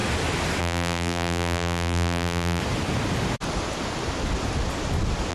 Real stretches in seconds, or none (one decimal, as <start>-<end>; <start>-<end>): 0.0-0.6; 2.6-5.3